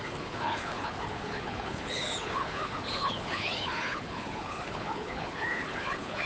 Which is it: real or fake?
fake